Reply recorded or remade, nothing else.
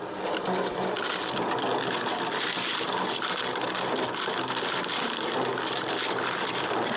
recorded